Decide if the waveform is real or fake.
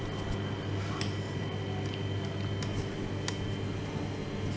real